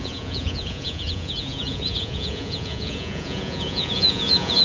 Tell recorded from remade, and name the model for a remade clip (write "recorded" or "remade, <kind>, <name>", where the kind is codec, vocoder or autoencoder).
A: remade, vocoder, Vocos